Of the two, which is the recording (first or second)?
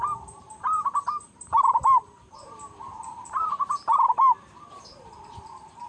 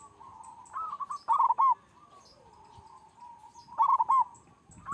second